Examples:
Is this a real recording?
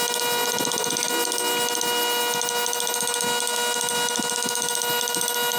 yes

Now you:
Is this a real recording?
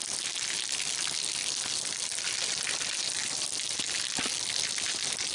yes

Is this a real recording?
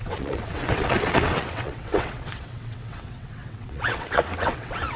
no